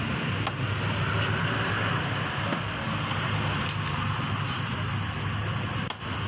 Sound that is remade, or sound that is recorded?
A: recorded